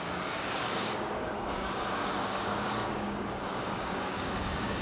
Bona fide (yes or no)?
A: no